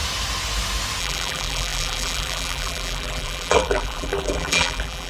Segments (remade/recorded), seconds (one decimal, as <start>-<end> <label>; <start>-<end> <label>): 0.0-1.0 recorded; 1.0-5.1 remade